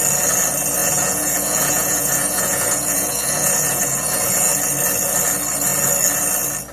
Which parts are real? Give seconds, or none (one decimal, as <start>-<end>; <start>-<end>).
0.0-0.8; 4.5-6.7